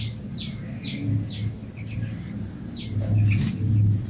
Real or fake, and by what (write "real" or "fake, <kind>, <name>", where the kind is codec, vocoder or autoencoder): real